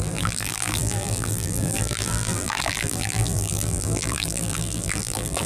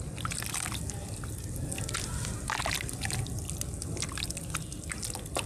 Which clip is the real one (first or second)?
second